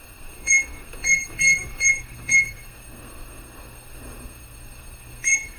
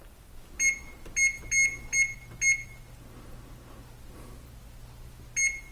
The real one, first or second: second